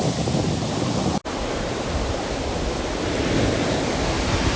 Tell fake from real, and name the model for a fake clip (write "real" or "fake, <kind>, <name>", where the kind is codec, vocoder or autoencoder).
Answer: real